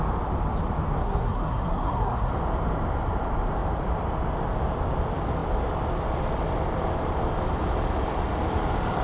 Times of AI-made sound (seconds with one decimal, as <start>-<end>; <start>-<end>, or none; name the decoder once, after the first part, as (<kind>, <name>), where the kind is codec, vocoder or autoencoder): 1.0-2.3 (codec, SNAC)